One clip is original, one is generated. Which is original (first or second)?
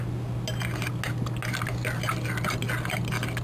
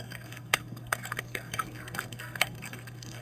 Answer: first